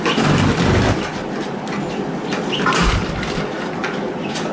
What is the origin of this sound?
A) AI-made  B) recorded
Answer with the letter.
B